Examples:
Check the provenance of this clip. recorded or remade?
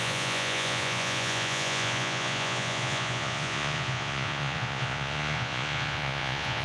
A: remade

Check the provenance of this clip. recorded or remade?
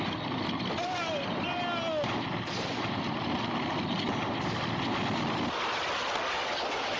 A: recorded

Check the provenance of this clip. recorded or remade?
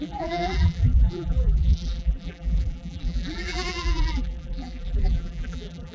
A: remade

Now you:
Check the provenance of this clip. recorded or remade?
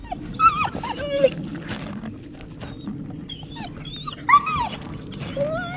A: recorded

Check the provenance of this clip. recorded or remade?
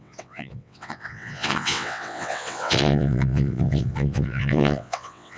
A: remade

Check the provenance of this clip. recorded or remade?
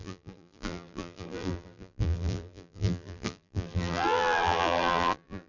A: remade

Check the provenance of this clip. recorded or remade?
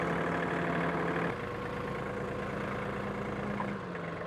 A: recorded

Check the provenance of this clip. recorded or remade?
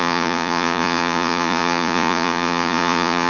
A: remade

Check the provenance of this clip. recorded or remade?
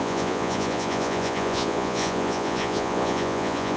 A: remade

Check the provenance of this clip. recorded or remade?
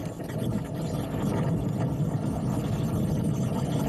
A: recorded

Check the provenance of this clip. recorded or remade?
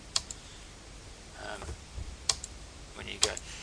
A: remade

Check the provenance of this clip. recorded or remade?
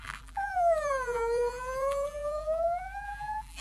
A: remade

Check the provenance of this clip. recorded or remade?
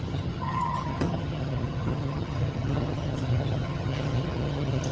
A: remade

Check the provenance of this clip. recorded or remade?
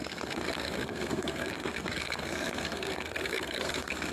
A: remade